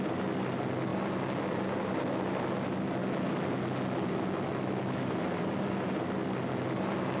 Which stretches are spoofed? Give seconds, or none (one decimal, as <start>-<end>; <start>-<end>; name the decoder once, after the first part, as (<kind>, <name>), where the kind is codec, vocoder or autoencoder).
none